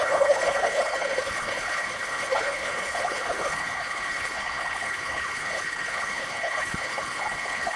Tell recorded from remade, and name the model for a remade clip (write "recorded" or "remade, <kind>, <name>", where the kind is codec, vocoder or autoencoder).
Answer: remade, codec, HILCodec